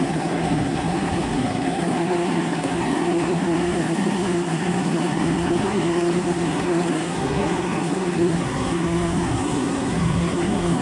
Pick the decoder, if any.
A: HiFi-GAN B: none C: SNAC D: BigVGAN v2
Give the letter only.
C